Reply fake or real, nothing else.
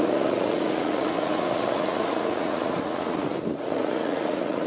fake